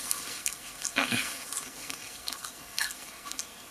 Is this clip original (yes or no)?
no